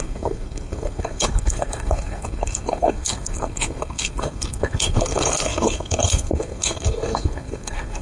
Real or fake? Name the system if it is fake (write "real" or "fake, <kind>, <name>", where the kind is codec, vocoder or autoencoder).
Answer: fake, codec, SNAC